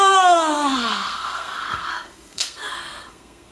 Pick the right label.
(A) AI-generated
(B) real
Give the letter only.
A